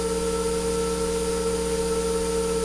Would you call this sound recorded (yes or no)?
yes